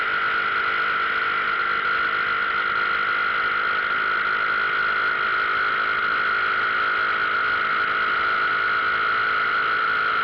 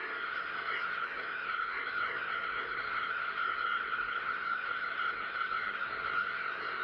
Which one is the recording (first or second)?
first